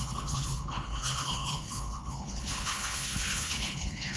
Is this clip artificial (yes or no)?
yes